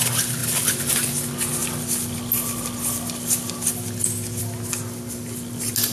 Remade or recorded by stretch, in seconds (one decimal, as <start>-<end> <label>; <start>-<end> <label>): 0.0-5.9 recorded